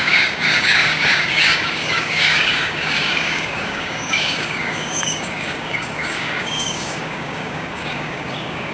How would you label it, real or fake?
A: fake